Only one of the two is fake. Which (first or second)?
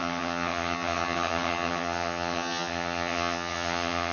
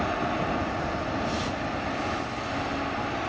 first